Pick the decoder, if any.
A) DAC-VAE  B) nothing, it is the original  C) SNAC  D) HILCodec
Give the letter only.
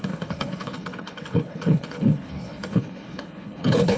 D